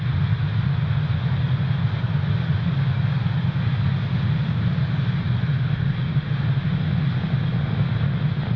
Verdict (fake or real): real